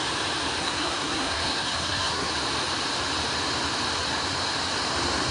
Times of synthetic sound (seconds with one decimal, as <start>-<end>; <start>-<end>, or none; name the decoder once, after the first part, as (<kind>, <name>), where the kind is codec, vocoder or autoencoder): 0.6-2.3 (codec, SNAC)